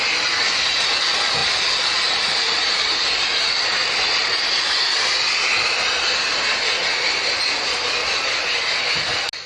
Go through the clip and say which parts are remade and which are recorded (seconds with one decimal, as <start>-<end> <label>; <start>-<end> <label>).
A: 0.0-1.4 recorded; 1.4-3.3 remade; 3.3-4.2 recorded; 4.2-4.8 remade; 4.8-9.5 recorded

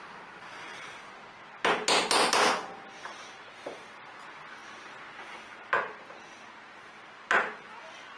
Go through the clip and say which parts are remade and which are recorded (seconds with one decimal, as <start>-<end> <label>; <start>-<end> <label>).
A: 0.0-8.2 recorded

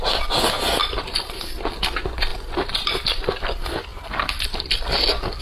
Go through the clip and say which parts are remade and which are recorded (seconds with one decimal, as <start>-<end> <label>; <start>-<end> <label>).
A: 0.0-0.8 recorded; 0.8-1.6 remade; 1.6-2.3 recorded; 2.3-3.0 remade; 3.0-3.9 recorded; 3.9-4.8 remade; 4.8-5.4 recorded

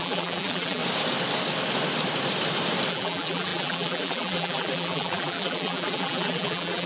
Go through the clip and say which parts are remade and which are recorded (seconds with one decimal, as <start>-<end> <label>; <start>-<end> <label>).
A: 0.0-0.8 remade; 0.8-2.9 recorded; 2.9-6.9 remade

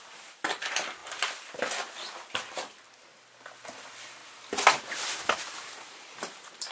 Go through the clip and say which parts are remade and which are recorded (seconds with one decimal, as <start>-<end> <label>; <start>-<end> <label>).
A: 0.0-4.2 remade; 4.2-4.8 recorded; 4.8-6.7 remade